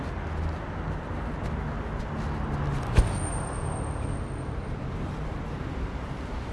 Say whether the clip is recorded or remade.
recorded